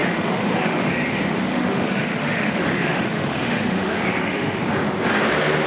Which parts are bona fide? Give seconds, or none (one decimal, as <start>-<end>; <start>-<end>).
0.8-1.5; 4.6-5.7

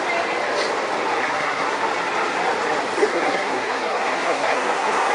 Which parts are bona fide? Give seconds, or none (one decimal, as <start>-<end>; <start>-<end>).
0.0-1.2; 1.8-3.1

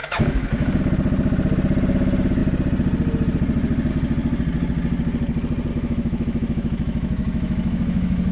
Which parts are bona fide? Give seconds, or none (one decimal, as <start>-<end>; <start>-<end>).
0.8-5.7

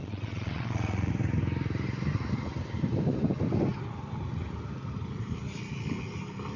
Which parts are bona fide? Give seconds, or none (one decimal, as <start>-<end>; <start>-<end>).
1.1-6.6

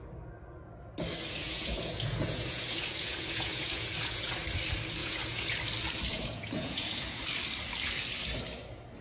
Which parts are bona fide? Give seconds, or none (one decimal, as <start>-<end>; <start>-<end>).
0.0-1.4; 4.3-5.0; 5.6-6.1; 7.3-9.0

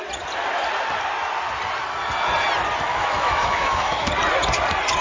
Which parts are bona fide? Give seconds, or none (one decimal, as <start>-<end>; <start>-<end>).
0.0-2.9; 4.1-5.0

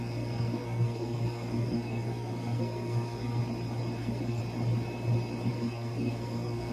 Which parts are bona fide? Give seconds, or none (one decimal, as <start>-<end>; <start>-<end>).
3.4-4.0; 4.4-5.5